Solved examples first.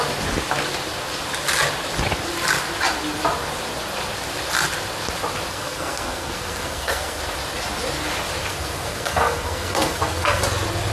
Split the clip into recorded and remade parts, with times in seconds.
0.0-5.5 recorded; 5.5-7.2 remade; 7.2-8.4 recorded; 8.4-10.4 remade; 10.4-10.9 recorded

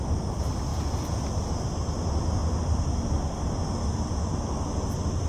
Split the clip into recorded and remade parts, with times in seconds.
0.0-0.7 recorded; 0.7-1.2 remade; 1.2-5.3 recorded

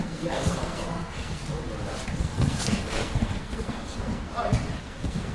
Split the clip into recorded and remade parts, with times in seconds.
0.0-1.4 remade; 1.4-2.2 recorded; 2.2-4.3 remade; 4.3-4.8 recorded; 4.8-5.3 remade

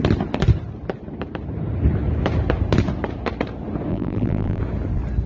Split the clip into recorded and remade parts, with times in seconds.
0.0-3.9 recorded; 3.9-4.6 remade; 4.6-5.3 recorded

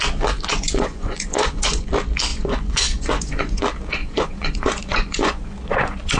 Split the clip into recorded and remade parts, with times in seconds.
0.0-0.5 recorded; 0.5-1.9 remade; 1.9-2.3 recorded; 2.3-3.6 remade; 3.6-4.0 recorded; 4.0-6.2 remade

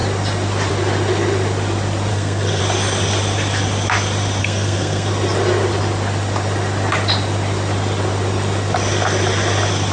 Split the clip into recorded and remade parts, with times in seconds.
0.0-2.1 recorded; 2.1-2.6 remade; 2.6-4.4 recorded; 4.4-5.1 remade; 5.1-9.9 recorded